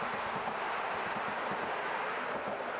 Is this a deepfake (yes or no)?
no